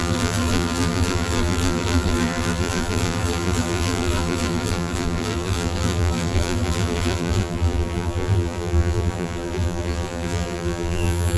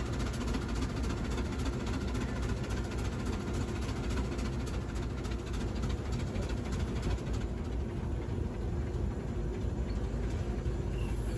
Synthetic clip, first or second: first